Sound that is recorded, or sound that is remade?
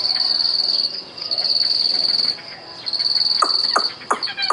recorded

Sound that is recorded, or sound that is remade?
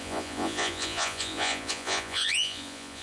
remade